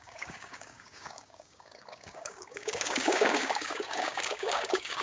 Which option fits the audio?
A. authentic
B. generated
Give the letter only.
B